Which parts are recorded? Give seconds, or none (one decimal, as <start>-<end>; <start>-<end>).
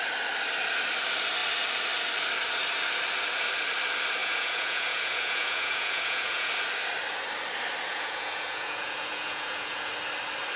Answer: 0.0-4.2; 6.5-7.9; 9.9-10.6